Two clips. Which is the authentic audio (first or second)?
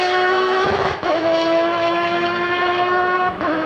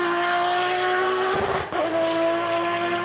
second